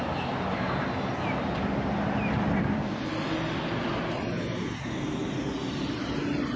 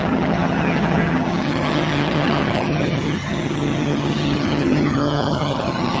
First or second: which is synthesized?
second